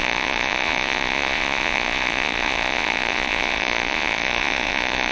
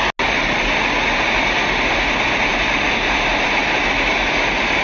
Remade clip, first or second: first